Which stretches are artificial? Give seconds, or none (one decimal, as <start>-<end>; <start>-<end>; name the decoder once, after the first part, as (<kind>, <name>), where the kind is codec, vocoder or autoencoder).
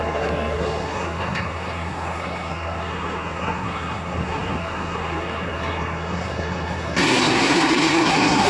0.0-8.5 (codec, SNAC)